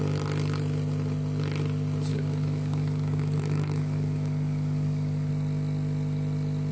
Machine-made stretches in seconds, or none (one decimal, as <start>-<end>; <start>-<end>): 2.1-5.3